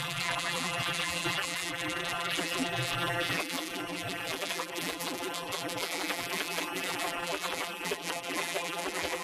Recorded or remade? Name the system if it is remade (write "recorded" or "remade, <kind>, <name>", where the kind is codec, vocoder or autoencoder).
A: remade, vocoder, BigVGAN v2